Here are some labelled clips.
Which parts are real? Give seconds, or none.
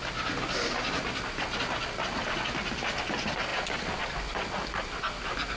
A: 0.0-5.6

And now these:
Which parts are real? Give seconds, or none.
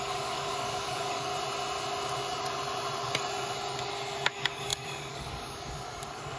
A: 1.3-4.3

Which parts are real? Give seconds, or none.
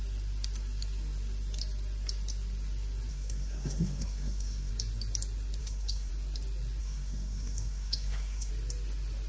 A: 0.0-3.1; 4.7-5.6; 6.1-6.8; 8.5-9.3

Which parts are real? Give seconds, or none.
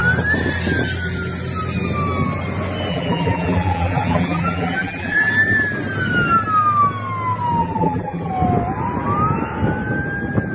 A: 0.0-2.9; 5.3-7.6; 8.3-10.5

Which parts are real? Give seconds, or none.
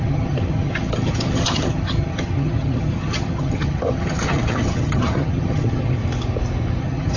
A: 6.0-6.8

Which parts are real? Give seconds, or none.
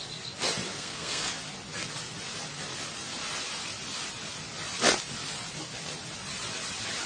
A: 0.0-0.7; 1.3-7.1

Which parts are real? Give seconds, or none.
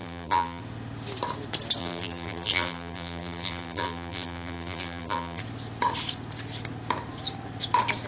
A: 0.6-1.8; 5.4-8.1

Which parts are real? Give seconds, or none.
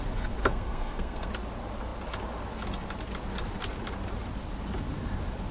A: 0.0-0.4; 1.3-5.5